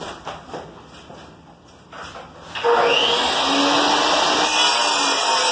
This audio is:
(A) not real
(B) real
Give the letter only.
B